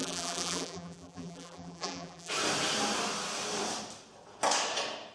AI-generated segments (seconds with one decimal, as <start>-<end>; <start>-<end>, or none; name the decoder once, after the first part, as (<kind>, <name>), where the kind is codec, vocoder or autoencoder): 0.0-2.3 (vocoder, BigVGAN v2)